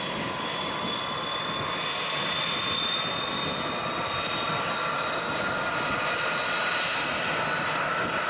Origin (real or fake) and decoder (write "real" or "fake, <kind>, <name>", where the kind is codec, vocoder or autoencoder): real